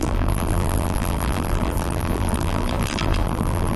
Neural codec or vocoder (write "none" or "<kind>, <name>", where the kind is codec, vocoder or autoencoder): vocoder, BigVGAN v2